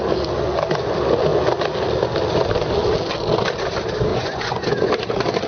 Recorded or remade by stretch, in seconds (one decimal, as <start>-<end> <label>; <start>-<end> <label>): 0.0-4.1 recorded; 4.1-4.9 remade; 4.9-5.5 recorded